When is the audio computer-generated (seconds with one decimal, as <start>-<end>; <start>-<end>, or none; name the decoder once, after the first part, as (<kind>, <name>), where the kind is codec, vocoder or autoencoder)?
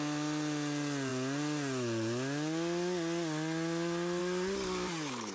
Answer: none